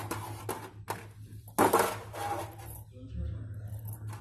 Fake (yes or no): no